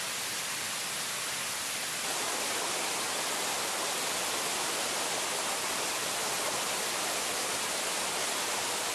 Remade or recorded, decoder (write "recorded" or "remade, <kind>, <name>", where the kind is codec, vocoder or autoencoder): recorded